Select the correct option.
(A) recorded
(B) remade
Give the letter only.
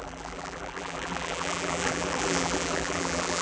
B